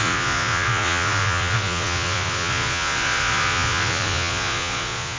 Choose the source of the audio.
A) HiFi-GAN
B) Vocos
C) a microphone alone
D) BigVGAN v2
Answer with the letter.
B